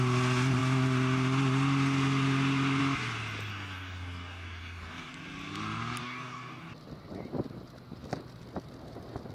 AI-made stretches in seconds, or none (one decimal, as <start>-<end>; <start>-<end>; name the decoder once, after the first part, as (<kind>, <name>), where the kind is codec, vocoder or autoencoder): 3.5-5.1 (codec, DAC); 6.0-6.7